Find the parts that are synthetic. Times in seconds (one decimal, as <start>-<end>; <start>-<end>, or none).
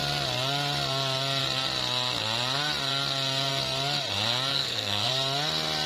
4.5-5.1